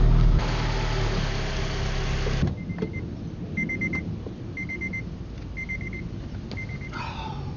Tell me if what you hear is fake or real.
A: real